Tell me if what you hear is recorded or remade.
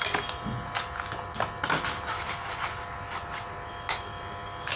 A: recorded